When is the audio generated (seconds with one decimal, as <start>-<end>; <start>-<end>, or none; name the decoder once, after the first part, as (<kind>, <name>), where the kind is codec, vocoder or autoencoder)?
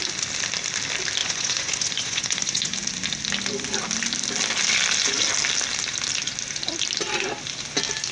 1.2-2.7 (vocoder, Vocos)